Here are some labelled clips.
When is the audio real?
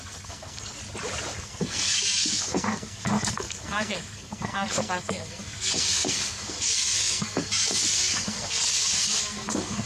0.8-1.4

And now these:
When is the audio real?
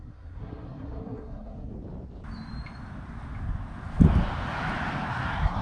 1.7-5.1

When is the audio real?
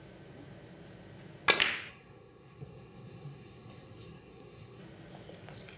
0.0-1.9; 4.8-5.8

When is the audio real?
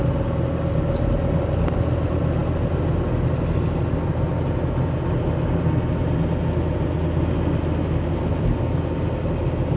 0.0-9.8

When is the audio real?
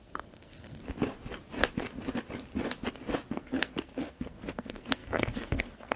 0.8-3.3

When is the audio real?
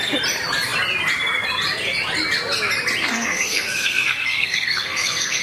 0.0-3.0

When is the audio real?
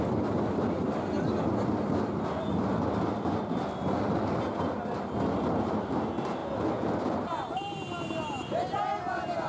0.0-9.5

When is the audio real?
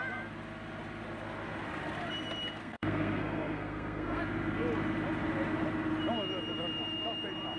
0.0-2.6; 4.2-7.6